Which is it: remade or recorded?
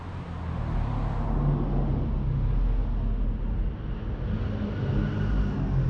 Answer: recorded